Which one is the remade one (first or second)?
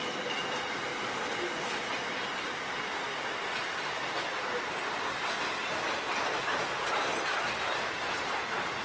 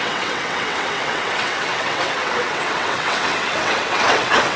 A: second